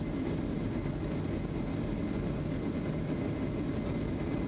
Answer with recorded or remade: recorded